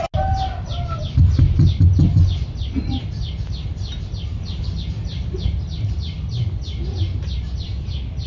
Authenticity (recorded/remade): recorded